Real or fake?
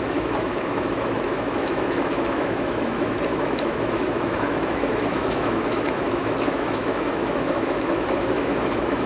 fake